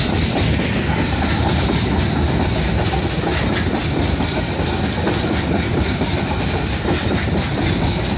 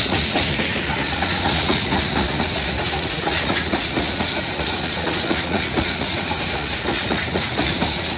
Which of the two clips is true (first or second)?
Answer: first